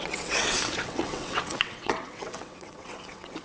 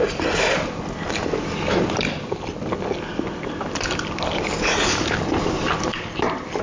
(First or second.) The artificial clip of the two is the first